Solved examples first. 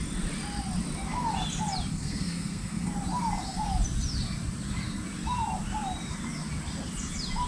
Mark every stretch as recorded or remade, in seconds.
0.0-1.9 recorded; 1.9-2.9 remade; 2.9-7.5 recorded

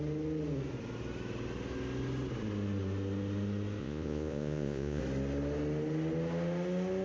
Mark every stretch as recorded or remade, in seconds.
0.0-3.8 recorded; 3.8-5.0 remade; 5.0-7.0 recorded

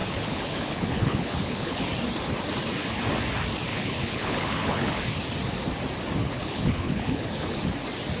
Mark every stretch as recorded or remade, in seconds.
0.0-1.8 remade; 1.8-3.7 recorded; 3.7-4.9 remade; 4.9-6.2 recorded; 6.2-7.6 remade; 7.6-8.2 recorded

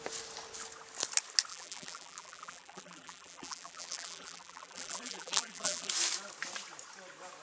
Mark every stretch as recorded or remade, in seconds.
0.0-1.5 recorded; 1.5-5.9 remade; 5.9-7.4 recorded

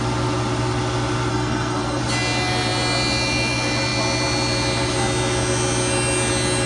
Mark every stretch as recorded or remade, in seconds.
0.0-1.3 recorded; 1.3-2.0 remade; 2.0-6.7 recorded

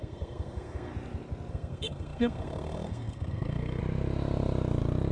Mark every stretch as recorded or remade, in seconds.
0.0-0.9 remade; 0.9-1.5 recorded; 1.5-3.8 remade; 3.8-5.1 recorded